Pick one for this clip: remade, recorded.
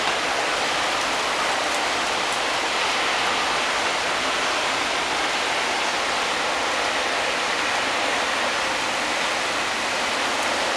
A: recorded